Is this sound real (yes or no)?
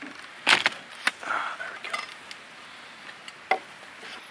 yes